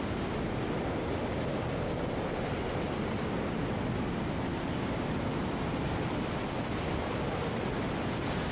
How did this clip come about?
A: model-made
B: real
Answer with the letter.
B